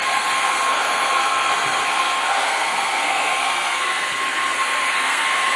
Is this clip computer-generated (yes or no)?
yes